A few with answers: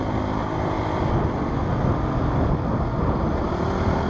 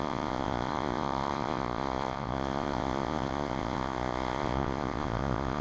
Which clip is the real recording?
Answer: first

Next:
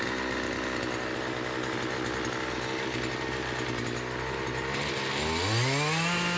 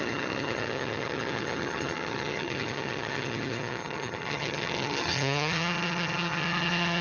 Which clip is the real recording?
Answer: first